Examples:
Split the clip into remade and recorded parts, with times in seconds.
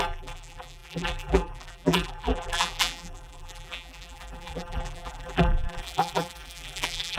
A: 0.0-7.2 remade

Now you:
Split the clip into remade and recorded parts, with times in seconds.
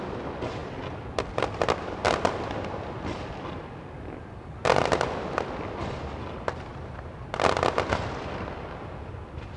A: 0.0-9.6 recorded